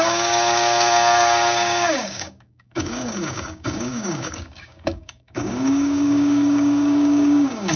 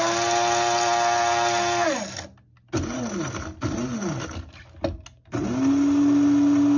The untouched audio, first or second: second